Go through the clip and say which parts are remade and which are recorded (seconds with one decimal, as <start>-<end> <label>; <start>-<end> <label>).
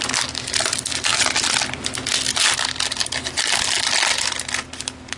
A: 0.0-5.2 recorded